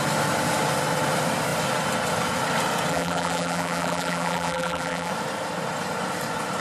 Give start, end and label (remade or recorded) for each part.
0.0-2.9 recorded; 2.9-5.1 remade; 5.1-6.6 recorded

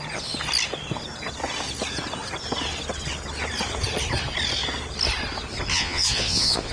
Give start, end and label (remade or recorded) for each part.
0.0-5.7 recorded; 5.7-6.7 remade

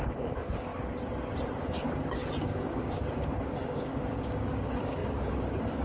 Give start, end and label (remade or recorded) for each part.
0.0-0.7 remade; 0.7-1.6 recorded; 1.6-5.8 remade

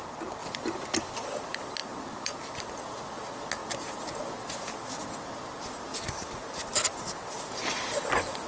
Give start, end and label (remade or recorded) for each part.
0.0-5.9 recorded; 5.9-6.5 remade; 6.5-8.5 recorded

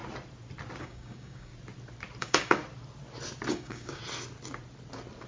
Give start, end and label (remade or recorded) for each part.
0.0-0.8 recorded; 0.8-1.5 remade; 1.5-2.2 recorded; 2.2-2.6 remade; 2.6-3.5 recorded; 3.5-4.0 remade; 4.0-5.3 recorded

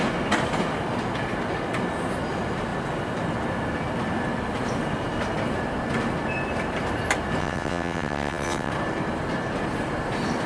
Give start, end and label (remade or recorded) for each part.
0.0-7.4 recorded; 7.4-8.7 remade; 8.7-10.5 recorded

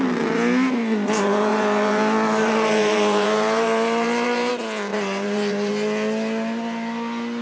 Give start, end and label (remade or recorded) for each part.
0.0-1.5 recorded; 1.5-4.5 remade; 4.5-4.9 recorded; 4.9-5.7 remade; 5.7-7.4 recorded

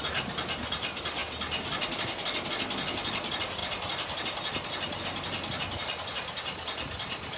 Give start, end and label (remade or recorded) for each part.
0.0-7.4 recorded